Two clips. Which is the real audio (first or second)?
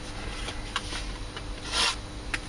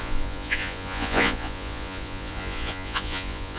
first